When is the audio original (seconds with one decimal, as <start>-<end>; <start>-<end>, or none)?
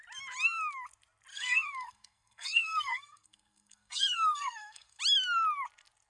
0.0-1.3; 5.0-6.1